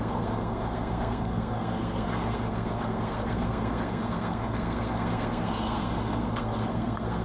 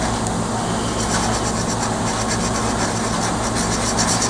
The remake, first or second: first